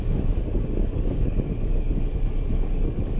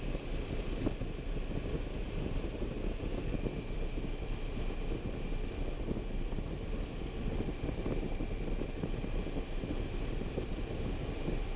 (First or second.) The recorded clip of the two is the second